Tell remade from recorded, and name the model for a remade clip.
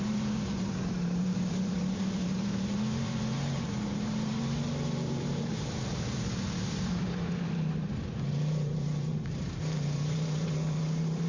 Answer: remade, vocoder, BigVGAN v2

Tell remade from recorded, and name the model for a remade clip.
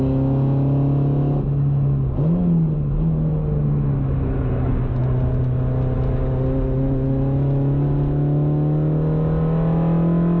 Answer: recorded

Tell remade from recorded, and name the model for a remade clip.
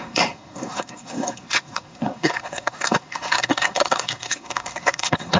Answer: remade, codec, SNAC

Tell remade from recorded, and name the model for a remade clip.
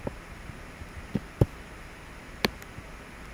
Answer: recorded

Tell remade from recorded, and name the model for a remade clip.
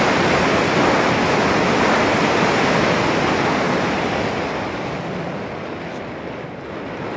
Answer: recorded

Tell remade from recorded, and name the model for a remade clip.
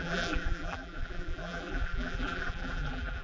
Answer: remade, vocoder, BigVGAN v2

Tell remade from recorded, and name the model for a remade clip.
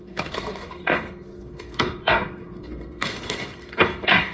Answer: remade, codec, SNAC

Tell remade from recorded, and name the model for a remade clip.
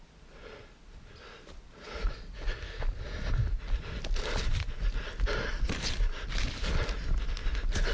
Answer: recorded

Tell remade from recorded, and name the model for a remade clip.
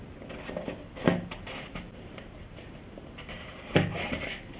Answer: recorded